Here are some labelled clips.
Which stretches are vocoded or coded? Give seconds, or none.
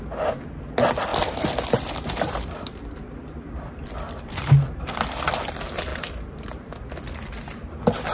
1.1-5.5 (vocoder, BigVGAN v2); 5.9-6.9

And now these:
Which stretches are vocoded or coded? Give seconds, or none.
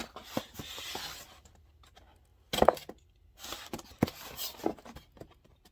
none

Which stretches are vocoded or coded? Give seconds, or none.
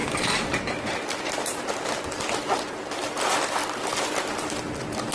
2.7-3.6 (vocoder, BigVGAN v2); 4.2-5.1